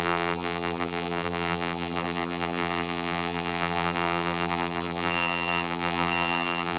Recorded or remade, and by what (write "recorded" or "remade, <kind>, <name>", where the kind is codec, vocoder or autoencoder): remade, vocoder, BigVGAN v2